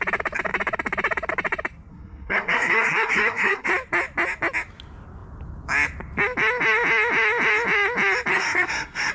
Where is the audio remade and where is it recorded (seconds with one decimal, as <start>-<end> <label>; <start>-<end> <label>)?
0.0-1.9 recorded; 1.9-3.7 remade; 3.7-8.3 recorded; 8.3-9.1 remade